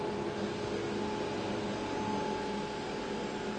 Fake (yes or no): no